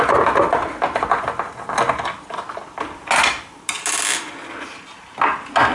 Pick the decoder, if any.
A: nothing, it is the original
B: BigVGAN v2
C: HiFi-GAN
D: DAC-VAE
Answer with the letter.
A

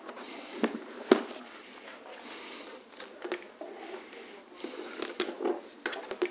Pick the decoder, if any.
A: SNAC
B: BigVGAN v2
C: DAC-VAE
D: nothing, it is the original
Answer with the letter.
D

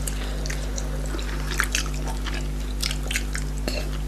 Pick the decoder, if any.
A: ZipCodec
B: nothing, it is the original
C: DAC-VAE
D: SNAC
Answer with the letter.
B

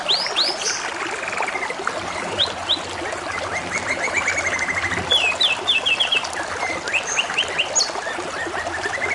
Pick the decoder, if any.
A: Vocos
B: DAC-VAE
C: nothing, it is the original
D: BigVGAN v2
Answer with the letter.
C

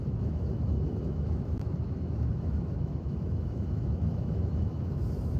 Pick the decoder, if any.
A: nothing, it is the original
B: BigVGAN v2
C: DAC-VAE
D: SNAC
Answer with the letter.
C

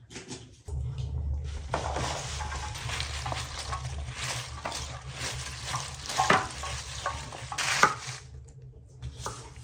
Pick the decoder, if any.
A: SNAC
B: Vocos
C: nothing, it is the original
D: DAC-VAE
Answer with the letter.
C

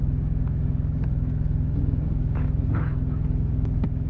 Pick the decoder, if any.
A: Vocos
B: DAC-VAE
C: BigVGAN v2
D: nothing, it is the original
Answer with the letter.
B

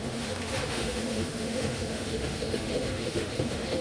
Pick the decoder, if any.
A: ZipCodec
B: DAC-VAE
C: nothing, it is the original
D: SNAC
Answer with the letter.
B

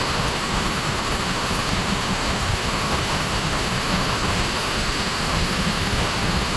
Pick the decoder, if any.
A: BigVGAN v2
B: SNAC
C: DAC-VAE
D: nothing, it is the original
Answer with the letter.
C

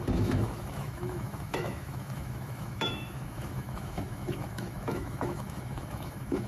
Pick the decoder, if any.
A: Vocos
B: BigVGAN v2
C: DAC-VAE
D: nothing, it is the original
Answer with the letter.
C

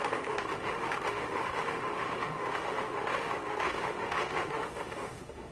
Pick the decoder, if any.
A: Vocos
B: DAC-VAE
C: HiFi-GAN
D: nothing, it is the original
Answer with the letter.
B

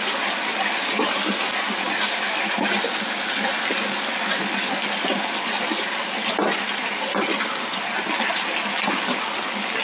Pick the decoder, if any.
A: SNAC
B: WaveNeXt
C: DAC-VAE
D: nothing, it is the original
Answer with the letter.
D